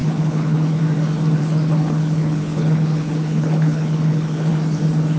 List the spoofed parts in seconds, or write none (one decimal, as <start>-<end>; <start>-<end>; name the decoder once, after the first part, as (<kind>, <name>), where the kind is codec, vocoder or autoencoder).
0.0-0.8 (codec, HILCodec); 1.4-4.5